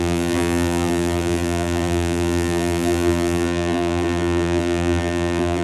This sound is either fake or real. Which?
fake